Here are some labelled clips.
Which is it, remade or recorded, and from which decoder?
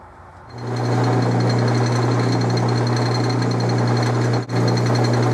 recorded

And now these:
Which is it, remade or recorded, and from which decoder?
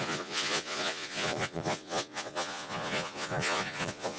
remade, vocoder, Vocos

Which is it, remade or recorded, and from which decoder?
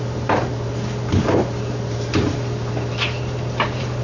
remade, vocoder, BigVGAN v2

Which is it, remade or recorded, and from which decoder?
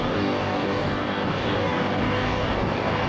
remade, codec, DAC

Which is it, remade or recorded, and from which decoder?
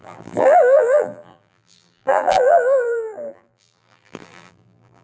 remade, vocoder, BigVGAN v2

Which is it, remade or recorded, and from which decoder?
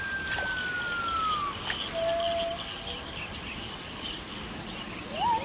recorded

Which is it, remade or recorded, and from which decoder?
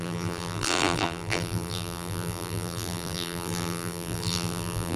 remade, vocoder, BigVGAN v2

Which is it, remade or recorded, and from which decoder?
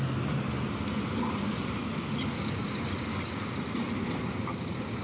recorded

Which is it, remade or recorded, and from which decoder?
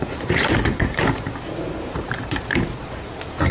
remade, vocoder, BigVGAN v2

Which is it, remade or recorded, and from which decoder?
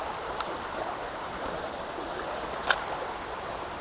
remade, vocoder, BigVGAN v2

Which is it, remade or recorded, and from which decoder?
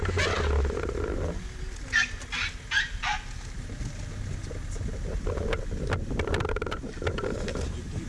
recorded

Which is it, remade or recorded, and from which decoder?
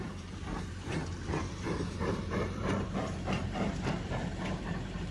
remade, vocoder, BigVGAN v2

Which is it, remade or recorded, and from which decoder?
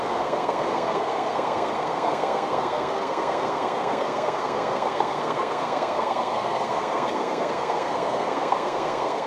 remade, codec, SNAC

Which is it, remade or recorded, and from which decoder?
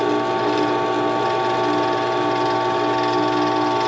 recorded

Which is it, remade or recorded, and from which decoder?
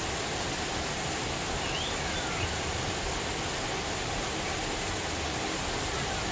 recorded